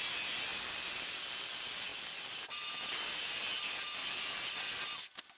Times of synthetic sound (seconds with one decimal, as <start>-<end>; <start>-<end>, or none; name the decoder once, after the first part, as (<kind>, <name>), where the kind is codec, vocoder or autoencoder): none